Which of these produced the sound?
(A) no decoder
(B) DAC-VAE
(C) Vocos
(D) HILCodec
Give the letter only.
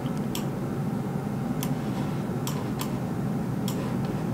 A